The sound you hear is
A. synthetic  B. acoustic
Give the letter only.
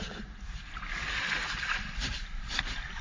B